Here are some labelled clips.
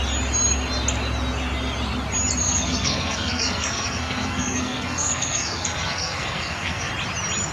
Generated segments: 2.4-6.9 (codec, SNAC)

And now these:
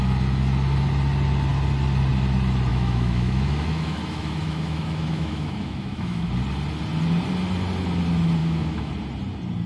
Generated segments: 2.7-6.3 (autoencoder, DAC-VAE); 8.4-8.9